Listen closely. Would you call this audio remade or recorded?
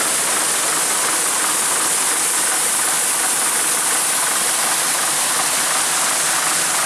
recorded